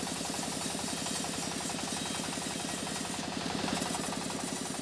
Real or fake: real